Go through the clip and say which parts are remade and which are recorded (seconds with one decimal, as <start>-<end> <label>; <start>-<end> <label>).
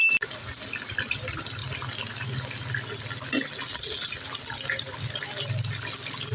0.0-6.3 recorded